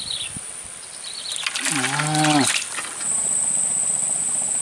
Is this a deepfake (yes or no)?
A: no